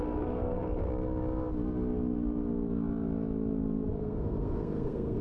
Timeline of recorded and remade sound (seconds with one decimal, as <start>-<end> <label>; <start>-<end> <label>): 0.0-0.9 remade; 0.9-4.0 recorded; 4.0-5.2 remade